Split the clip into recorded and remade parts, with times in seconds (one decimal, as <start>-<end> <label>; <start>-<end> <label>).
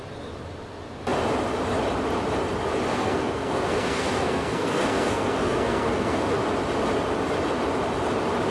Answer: 0.0-2.9 recorded; 2.9-6.3 remade; 6.3-8.5 recorded